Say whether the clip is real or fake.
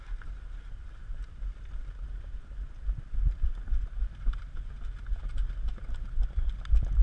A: real